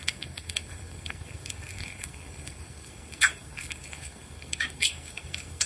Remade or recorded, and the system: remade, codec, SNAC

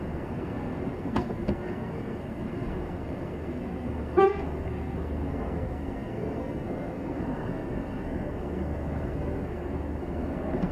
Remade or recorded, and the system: remade, codec, SNAC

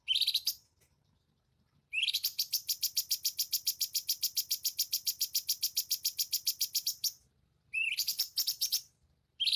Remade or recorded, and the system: remade, vocoder, BigVGAN v2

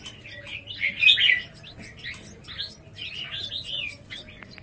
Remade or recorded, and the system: recorded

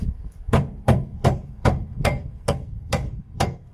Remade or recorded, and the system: remade, codec, SNAC